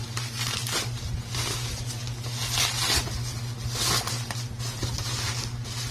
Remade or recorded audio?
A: recorded